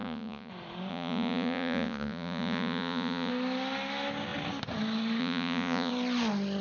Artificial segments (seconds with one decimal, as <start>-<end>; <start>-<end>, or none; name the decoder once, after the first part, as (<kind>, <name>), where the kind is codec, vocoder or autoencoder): 0.0-0.5 (vocoder, Vocos); 0.9-3.3; 5.2-5.9